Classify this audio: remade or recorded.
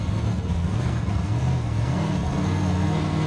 remade